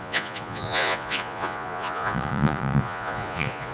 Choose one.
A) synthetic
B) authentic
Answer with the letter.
A